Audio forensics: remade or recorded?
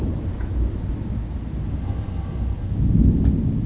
recorded